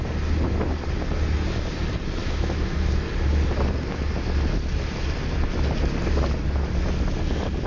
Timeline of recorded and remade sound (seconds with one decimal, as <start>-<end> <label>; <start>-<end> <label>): 0.0-2.2 recorded; 2.2-2.9 remade; 2.9-7.7 recorded